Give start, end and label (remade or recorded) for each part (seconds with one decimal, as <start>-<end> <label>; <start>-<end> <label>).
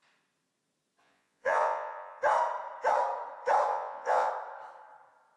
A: 0.0-1.0 recorded; 1.0-2.2 remade; 2.2-3.7 recorded; 3.7-4.3 remade; 4.3-5.4 recorded